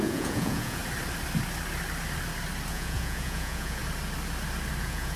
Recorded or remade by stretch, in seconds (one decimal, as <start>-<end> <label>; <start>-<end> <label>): 0.0-0.8 remade; 0.8-2.7 recorded; 2.7-3.8 remade; 3.8-4.8 recorded; 4.8-5.2 remade